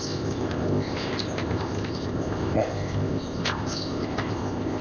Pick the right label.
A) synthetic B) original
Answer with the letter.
A